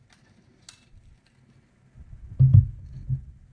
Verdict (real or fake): real